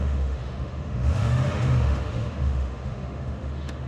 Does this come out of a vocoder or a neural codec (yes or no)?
yes